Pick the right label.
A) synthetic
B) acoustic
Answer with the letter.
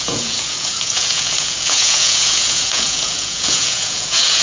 A